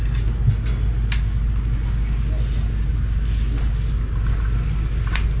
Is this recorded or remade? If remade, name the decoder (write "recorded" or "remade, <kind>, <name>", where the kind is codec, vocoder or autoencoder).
recorded